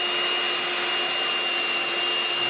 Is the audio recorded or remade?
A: recorded